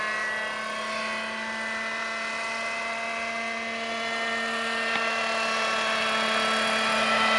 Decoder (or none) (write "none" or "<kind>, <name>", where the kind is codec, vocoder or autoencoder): none